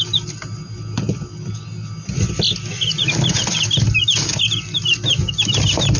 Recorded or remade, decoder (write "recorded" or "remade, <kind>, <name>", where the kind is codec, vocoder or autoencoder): recorded